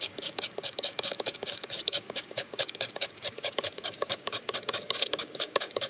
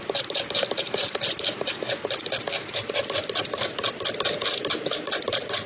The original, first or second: second